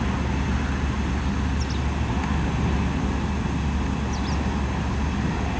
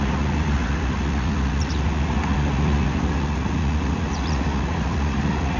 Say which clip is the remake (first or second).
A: second